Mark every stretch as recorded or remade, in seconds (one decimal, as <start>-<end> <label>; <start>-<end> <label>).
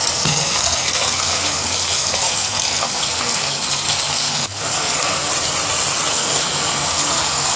0.0-5.3 remade; 5.3-6.1 recorded; 6.1-7.6 remade